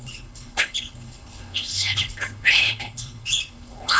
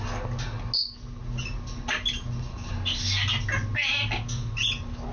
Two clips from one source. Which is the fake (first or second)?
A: first